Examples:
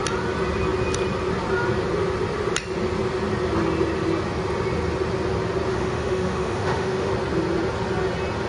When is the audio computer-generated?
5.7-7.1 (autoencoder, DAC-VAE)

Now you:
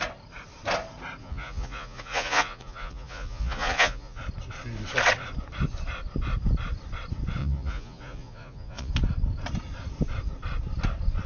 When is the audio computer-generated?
1.2-4.2 (vocoder, Vocos); 7.4-8.9

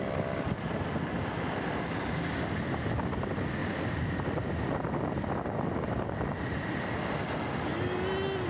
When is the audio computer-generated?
none